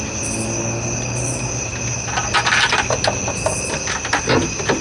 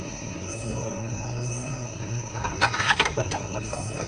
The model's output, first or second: second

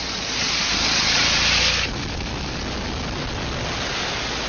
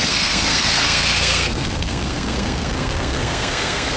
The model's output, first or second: second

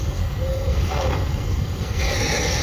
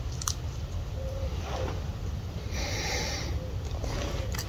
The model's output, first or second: first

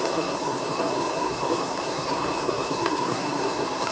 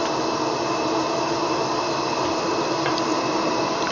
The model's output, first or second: first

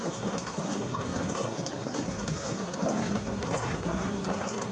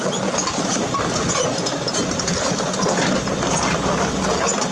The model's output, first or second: first